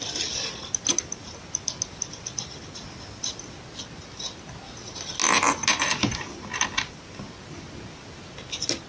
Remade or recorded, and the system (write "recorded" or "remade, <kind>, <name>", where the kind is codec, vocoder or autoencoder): recorded